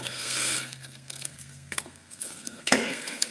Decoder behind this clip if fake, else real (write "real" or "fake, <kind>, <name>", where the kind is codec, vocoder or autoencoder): fake, codec, SNAC